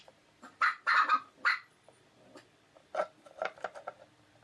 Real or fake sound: real